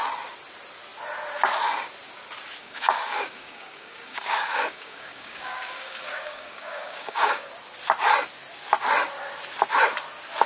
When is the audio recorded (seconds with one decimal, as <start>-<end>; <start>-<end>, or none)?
0.0-2.6; 7.5-10.5